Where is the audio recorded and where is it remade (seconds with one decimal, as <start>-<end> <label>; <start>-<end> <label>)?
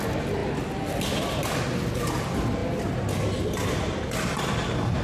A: 0.0-5.0 recorded